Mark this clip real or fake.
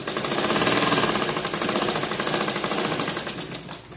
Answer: real